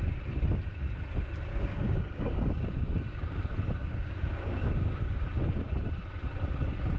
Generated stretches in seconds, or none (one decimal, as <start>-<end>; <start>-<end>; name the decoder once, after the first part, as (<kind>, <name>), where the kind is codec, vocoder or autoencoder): 1.5-3.4 (codec, DAC); 3.8-5.2

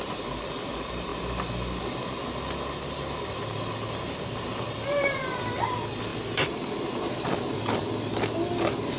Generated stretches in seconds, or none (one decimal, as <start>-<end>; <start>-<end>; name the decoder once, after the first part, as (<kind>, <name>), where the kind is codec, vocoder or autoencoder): none